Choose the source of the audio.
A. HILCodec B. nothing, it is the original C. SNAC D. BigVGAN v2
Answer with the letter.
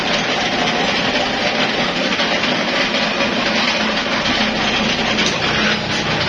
B